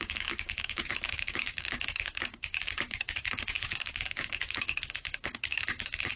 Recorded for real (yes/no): no